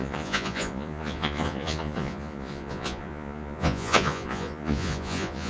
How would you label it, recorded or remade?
remade